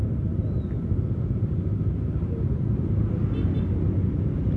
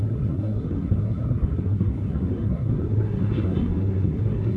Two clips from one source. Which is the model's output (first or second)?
second